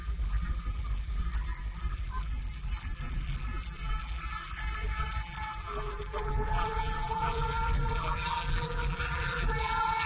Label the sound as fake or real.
fake